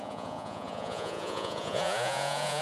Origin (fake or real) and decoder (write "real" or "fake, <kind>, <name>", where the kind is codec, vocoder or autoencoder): fake, vocoder, Vocos